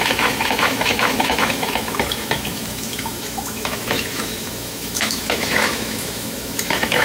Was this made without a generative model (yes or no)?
no